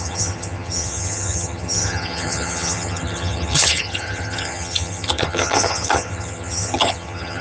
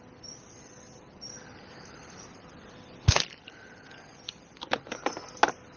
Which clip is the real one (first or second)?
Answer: second